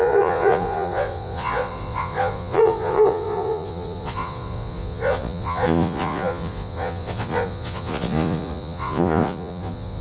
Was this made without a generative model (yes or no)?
no